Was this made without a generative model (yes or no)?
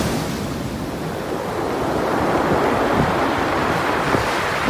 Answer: yes